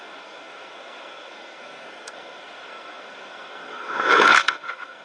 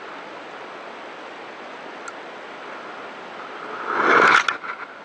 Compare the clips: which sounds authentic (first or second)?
second